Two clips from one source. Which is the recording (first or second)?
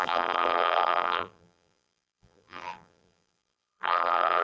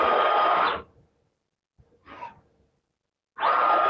second